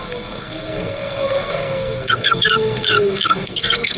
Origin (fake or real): fake